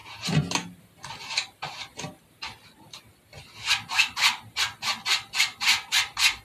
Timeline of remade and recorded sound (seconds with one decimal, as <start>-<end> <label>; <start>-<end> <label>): 0.0-6.4 recorded